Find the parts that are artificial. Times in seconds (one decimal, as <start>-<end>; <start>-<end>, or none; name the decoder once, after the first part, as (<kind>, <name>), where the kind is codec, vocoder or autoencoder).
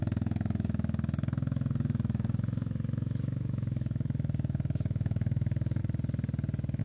0.0-5.8 (autoencoder, DAC-VAE)